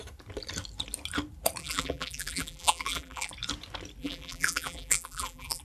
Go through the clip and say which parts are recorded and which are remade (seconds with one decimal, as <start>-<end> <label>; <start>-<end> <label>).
0.0-1.6 recorded; 1.6-3.3 remade; 3.3-4.0 recorded; 4.0-5.6 remade